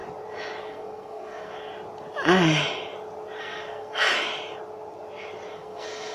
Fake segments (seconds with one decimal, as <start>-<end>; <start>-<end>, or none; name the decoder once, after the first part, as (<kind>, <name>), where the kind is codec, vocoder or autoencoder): 0.6-1.7 (codec, SNAC); 3.4-4.1; 5.5-6.1